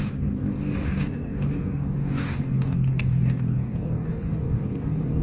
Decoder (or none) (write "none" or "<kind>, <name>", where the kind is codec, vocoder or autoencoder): codec, DAC